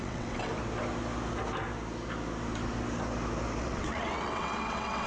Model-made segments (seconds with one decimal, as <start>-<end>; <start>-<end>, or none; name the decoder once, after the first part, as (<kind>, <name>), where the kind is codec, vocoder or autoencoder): 0.0-0.5 (vocoder, WaveNeXt); 3.6-5.1